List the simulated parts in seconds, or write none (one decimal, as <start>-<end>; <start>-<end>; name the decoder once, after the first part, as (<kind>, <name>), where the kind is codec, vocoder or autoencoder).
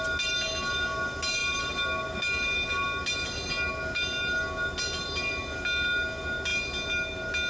none